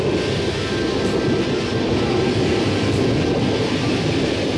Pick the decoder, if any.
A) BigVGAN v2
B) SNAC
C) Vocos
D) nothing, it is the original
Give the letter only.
A